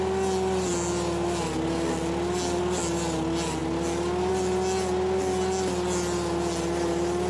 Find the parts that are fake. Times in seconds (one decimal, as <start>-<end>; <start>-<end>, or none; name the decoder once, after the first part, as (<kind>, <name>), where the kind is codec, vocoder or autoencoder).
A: none